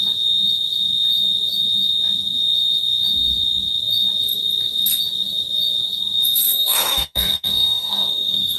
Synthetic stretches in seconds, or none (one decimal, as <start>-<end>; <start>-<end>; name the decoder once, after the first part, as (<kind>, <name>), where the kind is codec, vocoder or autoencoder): 6.5-8.6 (codec, SNAC)